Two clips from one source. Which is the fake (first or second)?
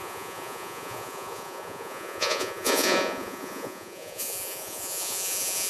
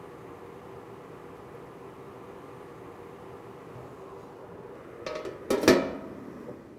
first